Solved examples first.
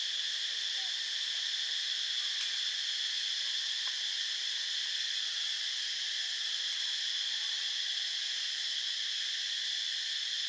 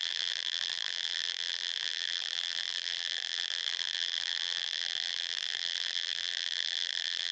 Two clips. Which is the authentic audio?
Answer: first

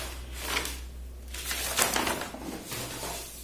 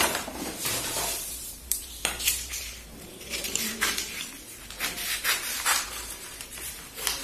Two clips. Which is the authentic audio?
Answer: first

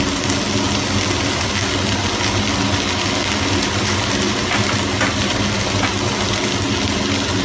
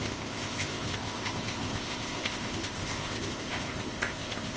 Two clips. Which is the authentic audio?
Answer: first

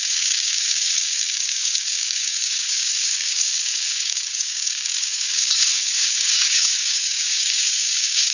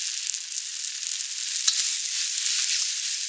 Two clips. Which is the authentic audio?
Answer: second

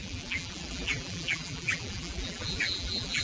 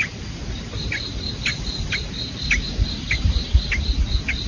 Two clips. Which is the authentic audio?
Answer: second